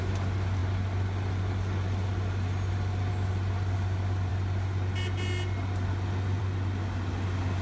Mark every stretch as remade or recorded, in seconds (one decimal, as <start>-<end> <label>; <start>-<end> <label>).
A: 0.0-7.6 recorded